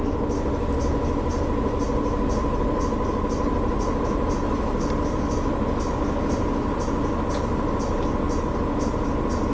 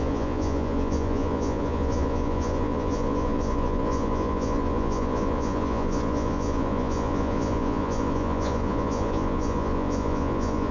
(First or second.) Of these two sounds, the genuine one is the first